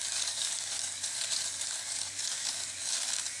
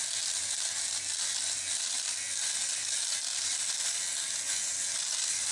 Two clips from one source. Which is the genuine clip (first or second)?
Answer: second